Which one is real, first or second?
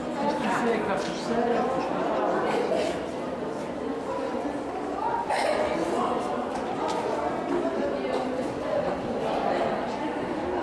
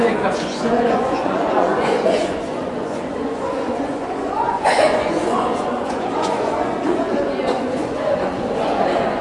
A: first